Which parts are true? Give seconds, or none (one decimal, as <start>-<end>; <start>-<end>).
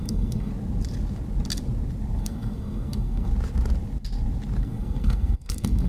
0.5-2.2; 3.3-4.6